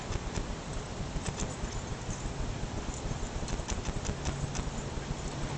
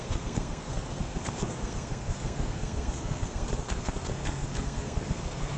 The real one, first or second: first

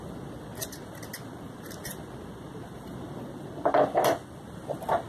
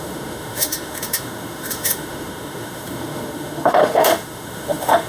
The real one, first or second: first